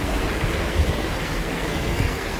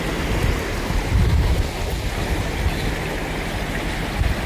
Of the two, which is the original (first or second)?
second